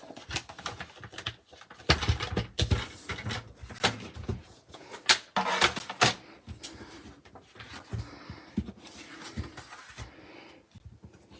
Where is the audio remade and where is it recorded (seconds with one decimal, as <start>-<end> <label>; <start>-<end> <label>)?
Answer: 0.0-4.2 recorded; 4.2-4.9 remade; 4.9-11.4 recorded